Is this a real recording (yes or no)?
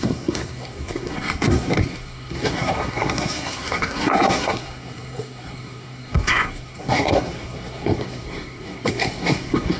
no